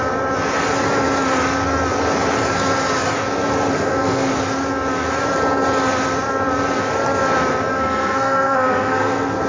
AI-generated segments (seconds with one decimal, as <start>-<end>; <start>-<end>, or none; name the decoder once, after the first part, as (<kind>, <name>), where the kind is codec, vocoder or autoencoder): 3.7-4.4 (codec, SNAC); 7.7-9.5